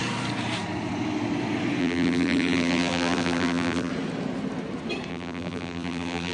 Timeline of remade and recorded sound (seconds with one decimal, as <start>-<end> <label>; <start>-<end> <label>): 0.0-1.8 recorded; 1.8-3.9 remade; 3.9-5.1 recorded; 5.1-6.3 remade